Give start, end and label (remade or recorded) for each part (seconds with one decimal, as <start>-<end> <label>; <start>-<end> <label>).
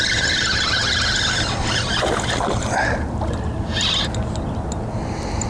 0.0-5.5 recorded